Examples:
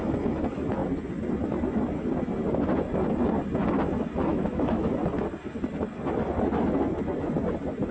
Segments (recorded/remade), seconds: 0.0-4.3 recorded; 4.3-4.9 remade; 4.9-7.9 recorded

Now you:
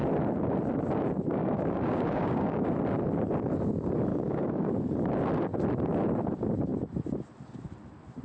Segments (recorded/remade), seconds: 0.0-1.4 recorded; 1.4-2.7 remade; 2.7-4.1 recorded; 4.1-4.7 remade; 4.7-8.2 recorded

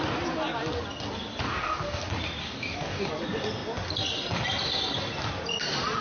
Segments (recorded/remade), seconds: 0.0-1.4 recorded; 1.4-2.0 remade; 2.0-2.4 recorded; 2.4-3.1 remade; 3.1-6.0 recorded

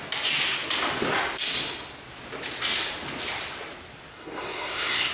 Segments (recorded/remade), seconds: 0.0-4.1 recorded; 4.1-5.1 remade

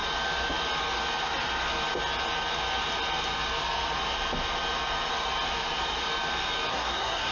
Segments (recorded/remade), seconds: 0.0-6.7 recorded; 6.7-7.3 remade

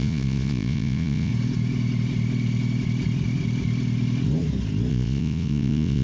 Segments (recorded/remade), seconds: 0.0-1.3 remade; 1.3-4.9 recorded; 4.9-6.0 remade

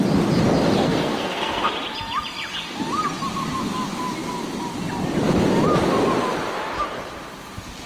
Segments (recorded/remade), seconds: 0.0-0.8 recorded; 0.8-1.7 remade; 1.7-7.9 recorded

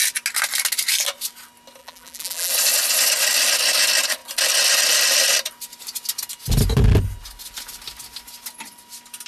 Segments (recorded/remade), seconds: 0.0-1.8 recorded; 1.8-2.5 remade; 2.5-9.3 recorded